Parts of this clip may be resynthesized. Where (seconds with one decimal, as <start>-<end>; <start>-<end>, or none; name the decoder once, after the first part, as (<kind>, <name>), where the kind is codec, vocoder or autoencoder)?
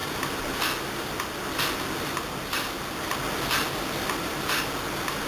none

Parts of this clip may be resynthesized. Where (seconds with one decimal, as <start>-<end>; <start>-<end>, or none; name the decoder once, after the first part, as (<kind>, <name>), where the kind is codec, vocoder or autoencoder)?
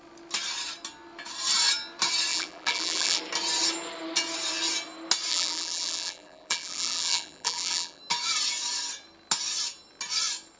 2.3-3.2 (vocoder, BigVGAN v2); 5.3-8.0